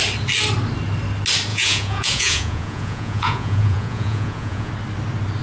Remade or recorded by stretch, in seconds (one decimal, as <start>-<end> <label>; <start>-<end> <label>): 0.0-1.5 recorded; 1.5-4.7 remade; 4.7-5.4 recorded